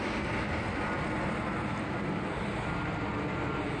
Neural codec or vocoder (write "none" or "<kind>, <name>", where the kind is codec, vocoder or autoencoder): none